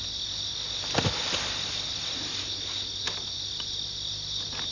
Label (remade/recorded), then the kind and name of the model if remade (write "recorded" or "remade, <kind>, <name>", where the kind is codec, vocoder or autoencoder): recorded